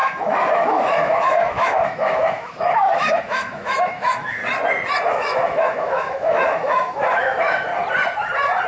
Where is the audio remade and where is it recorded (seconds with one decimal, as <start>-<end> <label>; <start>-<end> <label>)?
0.0-4.4 remade; 4.4-5.1 recorded; 5.1-7.7 remade; 7.7-8.7 recorded